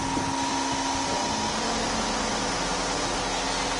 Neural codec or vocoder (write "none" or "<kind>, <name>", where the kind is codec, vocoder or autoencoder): none